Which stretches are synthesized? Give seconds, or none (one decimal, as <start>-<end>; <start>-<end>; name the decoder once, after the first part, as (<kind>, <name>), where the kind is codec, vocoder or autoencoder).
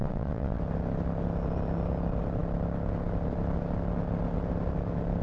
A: 0.0-0.6 (vocoder, WaveNeXt)